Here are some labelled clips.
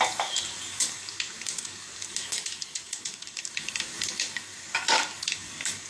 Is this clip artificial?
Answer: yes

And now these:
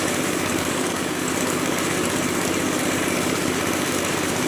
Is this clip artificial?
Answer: yes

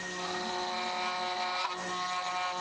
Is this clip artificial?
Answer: no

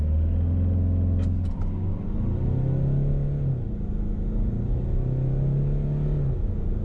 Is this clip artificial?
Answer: no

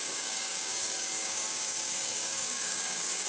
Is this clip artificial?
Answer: yes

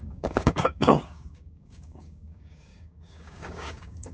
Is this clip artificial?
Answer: yes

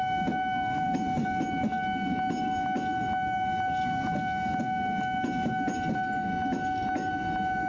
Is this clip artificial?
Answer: no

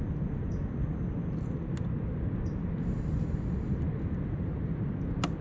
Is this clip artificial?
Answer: no